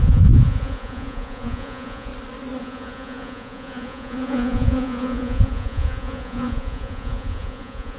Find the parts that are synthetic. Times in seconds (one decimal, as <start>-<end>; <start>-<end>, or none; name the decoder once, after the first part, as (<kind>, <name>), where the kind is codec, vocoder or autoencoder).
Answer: 0.0-2.1 (vocoder, Vocos); 2.6-8.0